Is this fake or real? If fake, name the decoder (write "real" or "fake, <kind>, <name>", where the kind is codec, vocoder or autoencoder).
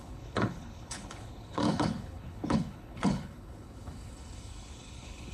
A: fake, codec, HILCodec